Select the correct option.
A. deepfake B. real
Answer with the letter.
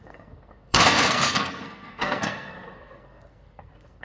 A